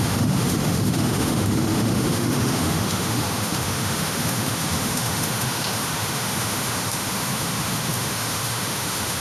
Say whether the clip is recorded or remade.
remade